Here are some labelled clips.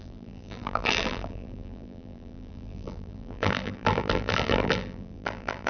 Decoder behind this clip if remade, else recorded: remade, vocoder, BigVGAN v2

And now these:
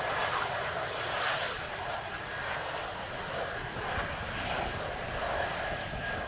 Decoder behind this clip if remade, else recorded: recorded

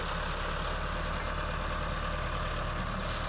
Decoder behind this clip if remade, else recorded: recorded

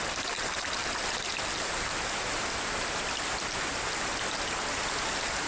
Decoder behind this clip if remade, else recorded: recorded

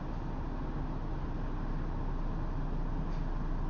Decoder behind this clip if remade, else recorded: recorded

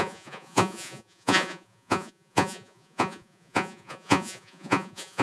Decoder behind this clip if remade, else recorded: remade, vocoder, Vocos